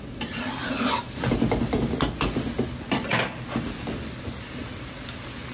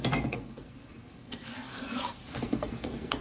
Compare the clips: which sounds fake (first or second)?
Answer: second